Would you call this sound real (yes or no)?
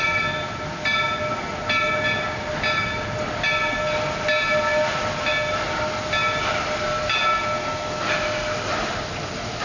yes